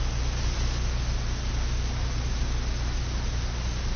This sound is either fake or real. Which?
real